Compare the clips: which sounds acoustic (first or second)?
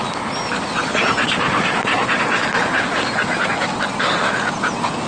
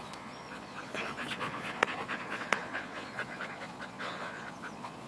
first